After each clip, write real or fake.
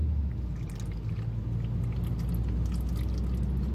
real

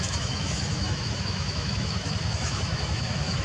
fake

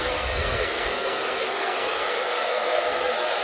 fake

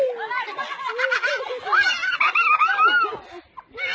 real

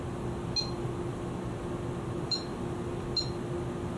real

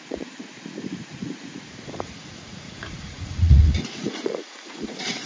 fake